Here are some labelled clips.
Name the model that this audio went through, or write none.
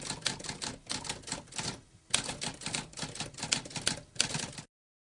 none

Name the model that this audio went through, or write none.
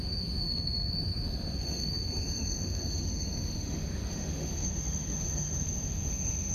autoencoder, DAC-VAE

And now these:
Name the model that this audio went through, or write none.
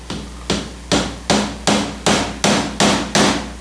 none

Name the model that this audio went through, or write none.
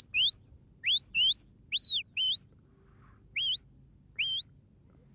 none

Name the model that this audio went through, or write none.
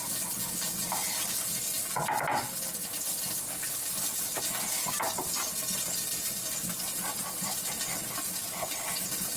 none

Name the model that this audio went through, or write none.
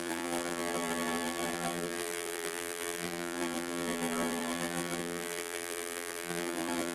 vocoder, BigVGAN v2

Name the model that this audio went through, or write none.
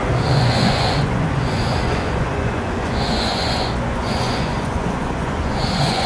vocoder, Vocos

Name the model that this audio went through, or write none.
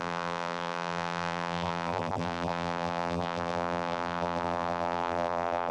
vocoder, BigVGAN v2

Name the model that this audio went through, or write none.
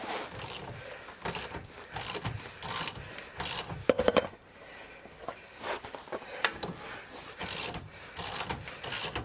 none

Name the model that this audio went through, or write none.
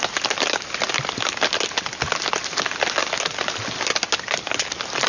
none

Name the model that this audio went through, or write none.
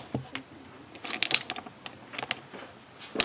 none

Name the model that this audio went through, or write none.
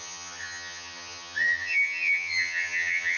vocoder, HiFi-GAN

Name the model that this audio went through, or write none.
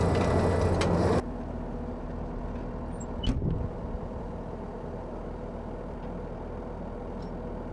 none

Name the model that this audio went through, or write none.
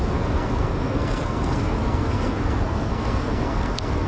codec, SNAC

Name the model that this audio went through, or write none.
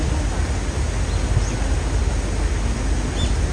none